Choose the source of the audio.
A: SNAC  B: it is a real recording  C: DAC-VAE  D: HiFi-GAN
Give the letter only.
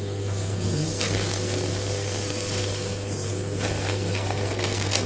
A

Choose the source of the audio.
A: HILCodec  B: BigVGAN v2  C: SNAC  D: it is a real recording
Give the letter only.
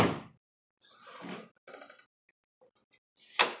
D